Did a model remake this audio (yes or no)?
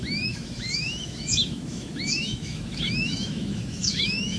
yes